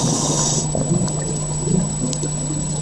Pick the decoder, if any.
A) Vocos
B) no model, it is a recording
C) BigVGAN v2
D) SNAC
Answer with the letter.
B